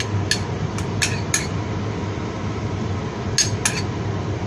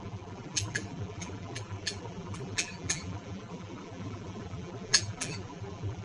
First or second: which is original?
first